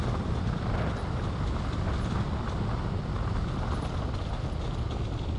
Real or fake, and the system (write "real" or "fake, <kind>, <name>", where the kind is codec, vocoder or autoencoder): real